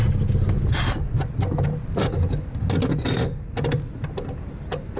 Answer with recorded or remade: recorded